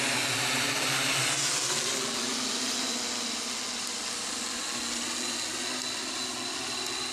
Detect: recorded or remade recorded